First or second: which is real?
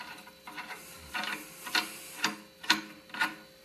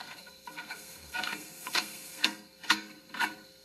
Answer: first